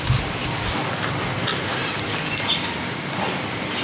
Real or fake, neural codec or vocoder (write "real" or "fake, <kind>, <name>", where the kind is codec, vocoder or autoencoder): real